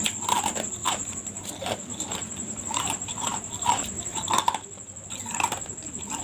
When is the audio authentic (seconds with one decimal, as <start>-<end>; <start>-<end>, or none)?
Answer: 0.0-0.8; 4.4-6.2